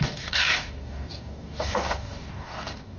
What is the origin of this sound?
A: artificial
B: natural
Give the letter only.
A